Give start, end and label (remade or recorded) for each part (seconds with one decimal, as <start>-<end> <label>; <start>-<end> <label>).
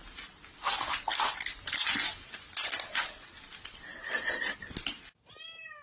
0.0-5.8 recorded